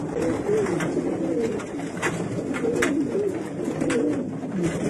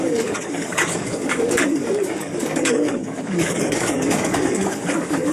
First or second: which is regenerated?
second